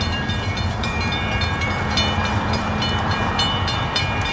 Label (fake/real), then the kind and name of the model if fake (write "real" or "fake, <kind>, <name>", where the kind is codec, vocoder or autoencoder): fake, vocoder, BigVGAN v2